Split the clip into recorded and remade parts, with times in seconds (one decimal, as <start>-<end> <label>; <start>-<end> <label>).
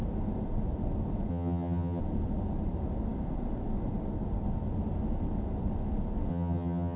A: 0.0-1.3 recorded; 1.3-2.0 remade; 2.0-6.3 recorded; 6.3-7.0 remade